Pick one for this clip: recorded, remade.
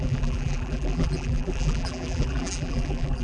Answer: remade